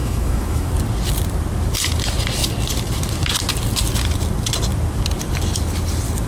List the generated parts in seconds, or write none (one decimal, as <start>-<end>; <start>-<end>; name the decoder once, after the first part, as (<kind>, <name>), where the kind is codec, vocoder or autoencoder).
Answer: 0.0-0.7 (autoencoder, DAC-VAE)